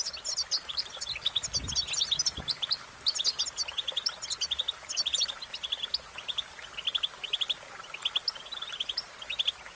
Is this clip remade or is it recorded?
recorded